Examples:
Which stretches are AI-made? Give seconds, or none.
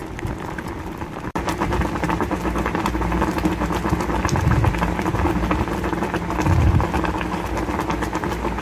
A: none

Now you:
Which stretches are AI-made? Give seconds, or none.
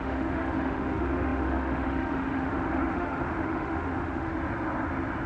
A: 0.0-4.3 (autoencoder, DAC-VAE)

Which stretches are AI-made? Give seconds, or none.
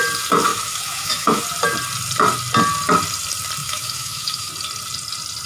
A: 0.5-1.4 (autoencoder, DAC-VAE); 3.6-4.5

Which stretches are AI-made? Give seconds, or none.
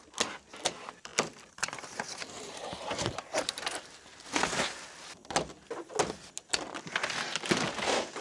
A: 1.1-4.6 (vocoder, BigVGAN v2)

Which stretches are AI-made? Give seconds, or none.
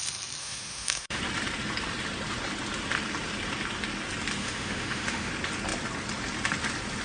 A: 0.4-1.2 (autoencoder, DAC-VAE); 4.4-5.3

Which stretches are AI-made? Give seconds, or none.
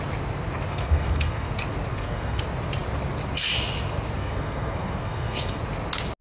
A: 0.7-1.5 (codec, SNAC); 1.9-2.4; 4.2-5.6